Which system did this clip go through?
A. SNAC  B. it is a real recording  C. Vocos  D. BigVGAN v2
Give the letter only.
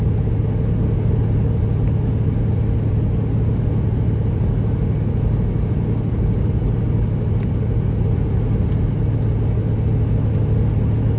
B